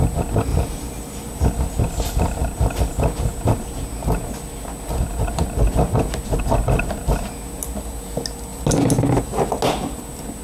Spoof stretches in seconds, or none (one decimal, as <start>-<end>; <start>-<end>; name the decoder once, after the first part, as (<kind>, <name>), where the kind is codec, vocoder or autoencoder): 0.5-1.5 (vocoder, BigVGAN v2)